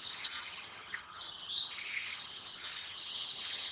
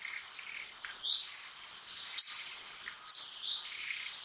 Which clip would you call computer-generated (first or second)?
first